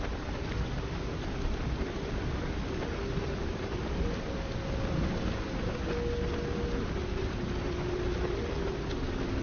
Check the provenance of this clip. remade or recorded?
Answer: recorded